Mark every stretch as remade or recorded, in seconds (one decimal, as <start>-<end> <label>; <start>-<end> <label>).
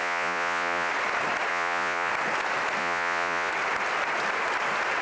0.0-0.9 remade; 0.9-1.5 recorded; 1.5-2.1 remade; 2.1-2.8 recorded; 2.8-3.5 remade; 3.5-5.0 recorded